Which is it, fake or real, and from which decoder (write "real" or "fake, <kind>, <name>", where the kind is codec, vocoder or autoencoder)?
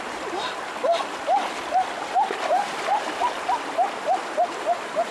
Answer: fake, vocoder, BigVGAN v2